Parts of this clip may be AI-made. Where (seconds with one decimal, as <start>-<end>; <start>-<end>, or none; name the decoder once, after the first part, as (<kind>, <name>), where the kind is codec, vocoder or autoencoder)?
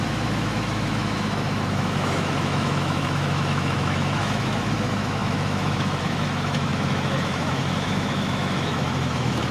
0.0-9.5 (autoencoder, DAC-VAE)